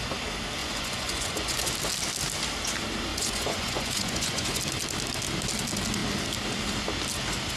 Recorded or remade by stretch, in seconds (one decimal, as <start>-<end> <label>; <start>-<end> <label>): 0.0-0.6 recorded; 0.6-1.7 remade; 1.7-3.1 recorded; 3.1-4.6 remade; 4.6-7.6 recorded